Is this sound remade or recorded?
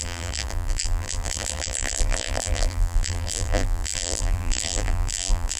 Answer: remade